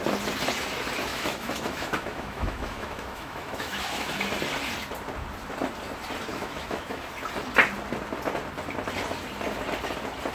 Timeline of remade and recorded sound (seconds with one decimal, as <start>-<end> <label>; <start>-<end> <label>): 0.0-1.1 recorded; 1.1-4.1 remade; 4.1-6.3 recorded; 6.3-7.1 remade; 7.1-10.3 recorded